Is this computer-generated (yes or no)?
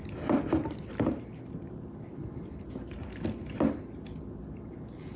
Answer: no